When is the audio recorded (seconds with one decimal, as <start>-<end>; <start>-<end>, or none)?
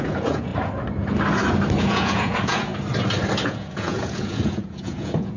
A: 0.5-1.8; 2.7-3.4